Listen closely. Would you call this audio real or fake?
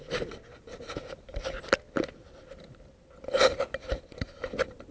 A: real